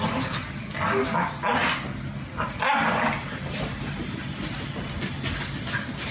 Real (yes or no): yes